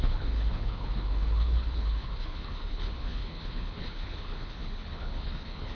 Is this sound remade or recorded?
remade